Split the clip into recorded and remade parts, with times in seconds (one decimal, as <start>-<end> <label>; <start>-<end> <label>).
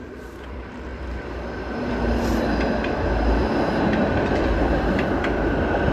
0.0-0.9 remade; 0.9-1.8 recorded; 1.8-3.4 remade; 3.4-4.0 recorded; 4.0-5.9 remade